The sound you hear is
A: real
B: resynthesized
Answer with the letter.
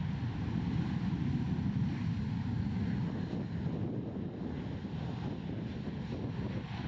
A